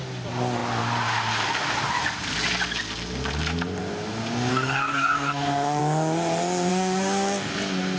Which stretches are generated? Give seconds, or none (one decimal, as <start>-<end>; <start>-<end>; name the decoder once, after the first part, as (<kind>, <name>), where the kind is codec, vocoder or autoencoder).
4.5-5.8 (codec, DAC); 6.7-7.5